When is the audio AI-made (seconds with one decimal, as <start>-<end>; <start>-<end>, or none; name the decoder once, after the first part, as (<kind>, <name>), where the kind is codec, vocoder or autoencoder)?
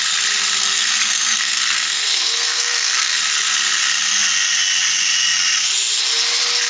0.6-3.1 (codec, SNAC)